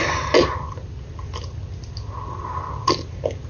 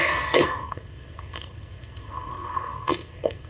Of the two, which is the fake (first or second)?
second